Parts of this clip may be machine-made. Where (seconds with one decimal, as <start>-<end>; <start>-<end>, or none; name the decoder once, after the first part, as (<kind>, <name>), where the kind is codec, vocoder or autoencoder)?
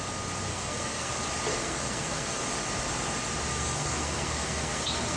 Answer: 0.5-1.1 (codec, SNAC); 1.5-2.4; 3.5-5.2